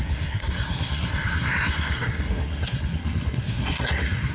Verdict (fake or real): fake